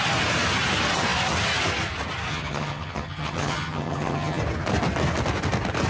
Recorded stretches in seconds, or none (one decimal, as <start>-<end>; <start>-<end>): 0.0-2.3; 4.4-5.9